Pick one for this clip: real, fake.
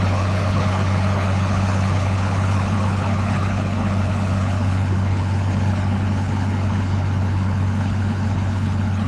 fake